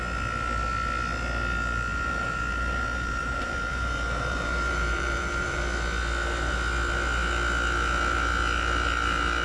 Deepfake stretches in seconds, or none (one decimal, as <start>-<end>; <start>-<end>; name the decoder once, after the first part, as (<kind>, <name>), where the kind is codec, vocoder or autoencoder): 1.9-5.6 (vocoder, BigVGAN v2)